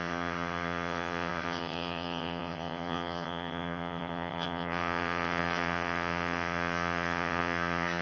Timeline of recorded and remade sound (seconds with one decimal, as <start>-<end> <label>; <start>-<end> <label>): 0.0-8.0 remade